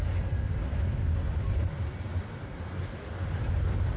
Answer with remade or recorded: recorded